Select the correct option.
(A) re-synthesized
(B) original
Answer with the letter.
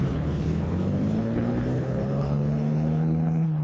A